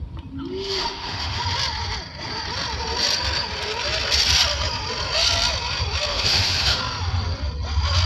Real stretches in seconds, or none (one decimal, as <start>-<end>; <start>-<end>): 0.0-0.5; 1.4-6.1; 6.8-8.1

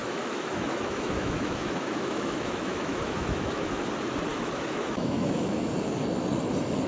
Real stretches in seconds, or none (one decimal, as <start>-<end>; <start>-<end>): 3.9-4.3; 5.7-6.9

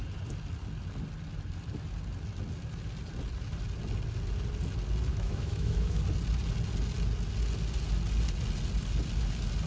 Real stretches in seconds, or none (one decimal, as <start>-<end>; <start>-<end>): 0.0-5.1; 6.0-9.7

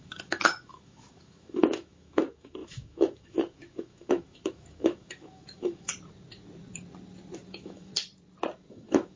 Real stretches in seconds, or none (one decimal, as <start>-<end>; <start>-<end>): 5.9-7.5; 7.9-8.7